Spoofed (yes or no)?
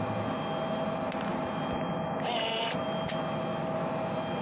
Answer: no